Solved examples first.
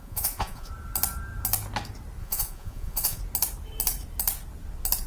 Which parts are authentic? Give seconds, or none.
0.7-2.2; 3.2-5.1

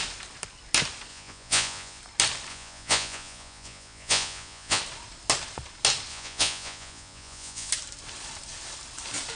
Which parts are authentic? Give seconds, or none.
0.0-1.1; 2.0-2.5; 4.8-6.1; 7.7-9.4

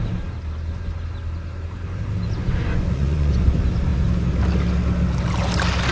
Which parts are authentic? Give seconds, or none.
0.0-2.4; 3.3-5.9

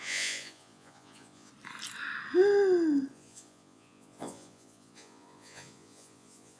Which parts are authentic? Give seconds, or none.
1.5-3.1

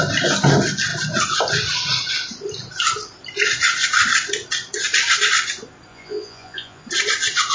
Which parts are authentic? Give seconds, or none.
0.0-5.9; 6.8-7.5

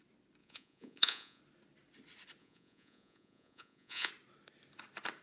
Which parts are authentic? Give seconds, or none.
0.0-0.4; 1.4-2.4; 4.1-5.2

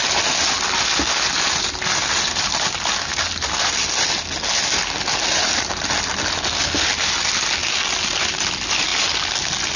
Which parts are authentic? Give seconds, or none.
0.0-9.8

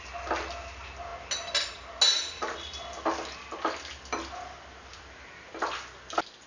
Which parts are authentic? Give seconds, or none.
0.0-6.5